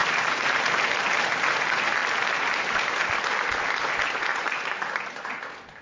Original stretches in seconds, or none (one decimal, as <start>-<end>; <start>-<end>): 0.7-2.0; 2.9-4.3; 5.2-5.8

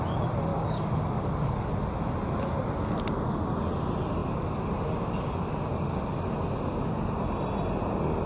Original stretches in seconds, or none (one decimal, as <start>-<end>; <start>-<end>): 0.0-0.5; 1.7-8.3

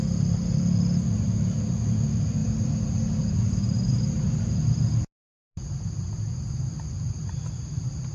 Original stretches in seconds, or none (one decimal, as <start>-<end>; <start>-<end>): 0.0-2.4; 4.6-8.1